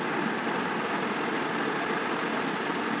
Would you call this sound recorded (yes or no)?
yes